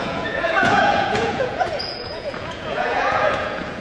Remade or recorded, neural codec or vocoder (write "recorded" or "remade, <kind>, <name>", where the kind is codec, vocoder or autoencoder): remade, vocoder, Vocos